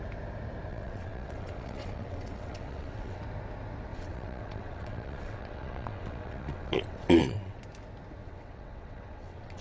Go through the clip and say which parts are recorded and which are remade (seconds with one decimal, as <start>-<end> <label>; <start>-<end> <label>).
0.0-0.7 recorded; 0.7-3.2 remade; 3.2-3.9 recorded; 3.9-7.6 remade; 7.6-8.2 recorded; 8.2-9.6 remade